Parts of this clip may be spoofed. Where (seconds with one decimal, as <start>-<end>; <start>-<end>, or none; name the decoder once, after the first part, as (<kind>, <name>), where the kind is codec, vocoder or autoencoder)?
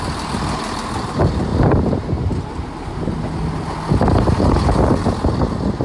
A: 1.5-3.1 (vocoder, BigVGAN v2)